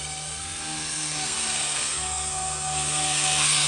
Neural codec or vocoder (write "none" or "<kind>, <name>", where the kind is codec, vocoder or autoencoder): codec, SNAC